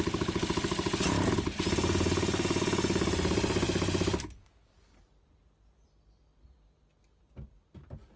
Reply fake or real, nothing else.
real